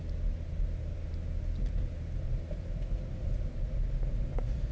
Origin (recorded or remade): recorded